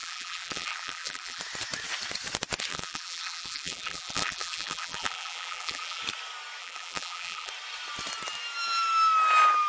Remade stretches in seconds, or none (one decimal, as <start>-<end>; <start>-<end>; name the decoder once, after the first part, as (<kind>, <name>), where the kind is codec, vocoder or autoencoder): 0.0-1.4 (vocoder, BigVGAN v2); 2.7-6.0; 6.6-7.5